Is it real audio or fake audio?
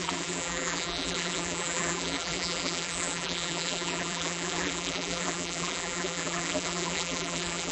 fake